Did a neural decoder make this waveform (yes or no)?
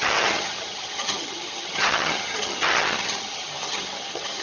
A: yes